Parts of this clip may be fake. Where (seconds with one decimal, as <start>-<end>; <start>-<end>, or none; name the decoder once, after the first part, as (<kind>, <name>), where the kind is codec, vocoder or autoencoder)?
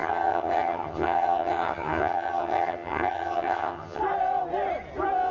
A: 0.0-4.0 (vocoder, HiFi-GAN)